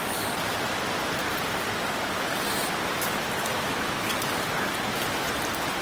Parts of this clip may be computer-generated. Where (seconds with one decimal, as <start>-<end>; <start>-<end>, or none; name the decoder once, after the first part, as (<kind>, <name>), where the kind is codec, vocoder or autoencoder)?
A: 3.5-4.1 (autoencoder, DAC-VAE)